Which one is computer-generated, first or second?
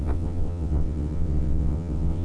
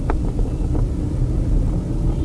first